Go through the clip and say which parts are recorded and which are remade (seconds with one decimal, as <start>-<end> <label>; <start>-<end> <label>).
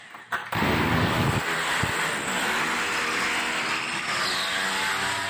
0.0-0.4 recorded; 0.4-0.9 remade; 0.9-5.3 recorded